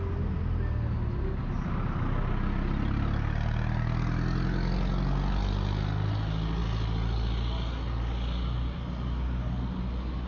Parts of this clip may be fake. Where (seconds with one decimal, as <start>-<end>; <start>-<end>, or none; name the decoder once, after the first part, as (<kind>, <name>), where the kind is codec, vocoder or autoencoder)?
none